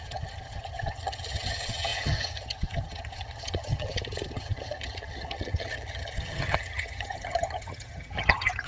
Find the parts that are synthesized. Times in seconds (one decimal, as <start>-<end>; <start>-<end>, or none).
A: 0.0-8.7